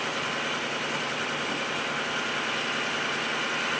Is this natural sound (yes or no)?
yes